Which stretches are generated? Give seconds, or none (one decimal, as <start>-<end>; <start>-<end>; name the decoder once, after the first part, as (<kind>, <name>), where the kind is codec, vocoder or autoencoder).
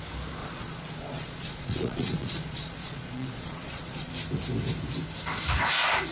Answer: 0.4-4.1 (vocoder, Vocos)